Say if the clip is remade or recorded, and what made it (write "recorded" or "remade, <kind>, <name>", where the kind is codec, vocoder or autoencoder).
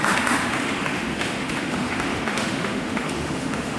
remade, autoencoder, DAC-VAE